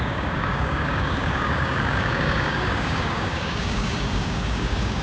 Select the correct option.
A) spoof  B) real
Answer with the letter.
A